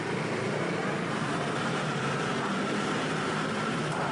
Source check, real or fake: fake